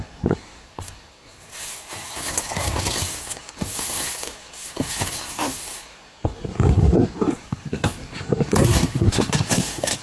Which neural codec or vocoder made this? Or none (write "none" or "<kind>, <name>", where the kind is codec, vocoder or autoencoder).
codec, SNAC